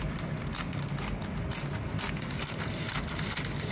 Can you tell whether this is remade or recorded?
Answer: recorded